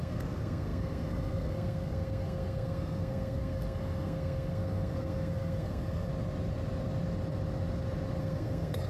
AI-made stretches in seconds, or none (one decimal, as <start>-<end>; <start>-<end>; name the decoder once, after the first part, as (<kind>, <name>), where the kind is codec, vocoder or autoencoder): 0.0-6.1 (codec, SNAC); 8.2-8.9